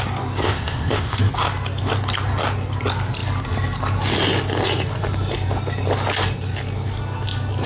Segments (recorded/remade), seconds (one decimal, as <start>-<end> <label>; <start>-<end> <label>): 0.0-0.4 recorded; 0.4-1.2 remade; 1.2-7.7 recorded